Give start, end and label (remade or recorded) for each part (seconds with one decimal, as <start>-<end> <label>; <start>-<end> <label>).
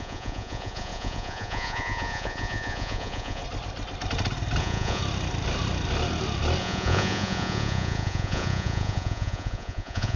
0.0-3.4 remade; 3.4-4.6 recorded; 4.6-5.0 remade; 5.0-6.6 recorded; 6.6-10.2 remade